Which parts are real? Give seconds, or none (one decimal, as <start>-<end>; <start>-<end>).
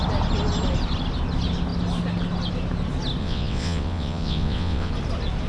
0.0-3.2; 4.9-5.5